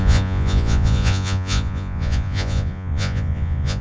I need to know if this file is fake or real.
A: fake